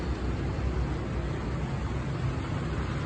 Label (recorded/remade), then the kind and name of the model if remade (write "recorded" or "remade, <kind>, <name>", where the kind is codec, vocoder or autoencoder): remade, vocoder, BigVGAN v2